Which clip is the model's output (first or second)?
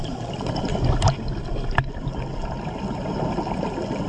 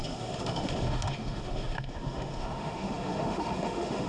second